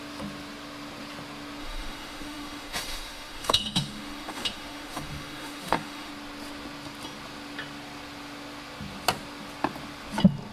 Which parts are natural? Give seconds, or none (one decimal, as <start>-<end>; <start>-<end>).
0.0-1.6; 6.1-10.5